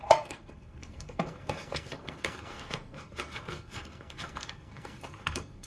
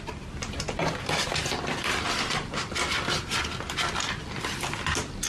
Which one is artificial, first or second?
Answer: first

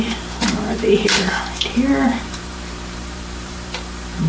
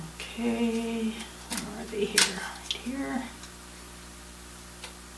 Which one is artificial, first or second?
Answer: first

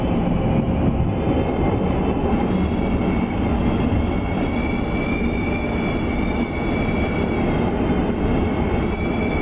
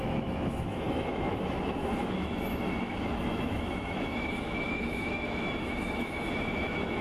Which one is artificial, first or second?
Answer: second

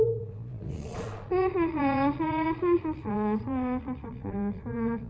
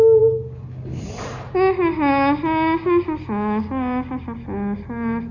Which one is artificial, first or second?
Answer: first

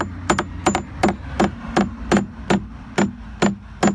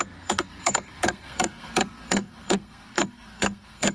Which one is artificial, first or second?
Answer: second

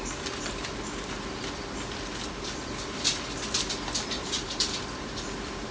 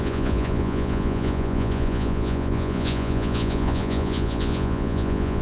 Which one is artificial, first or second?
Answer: second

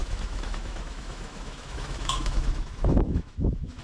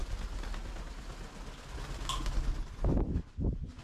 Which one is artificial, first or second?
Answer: first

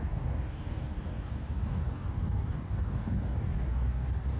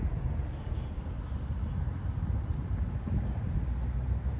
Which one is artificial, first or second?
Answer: first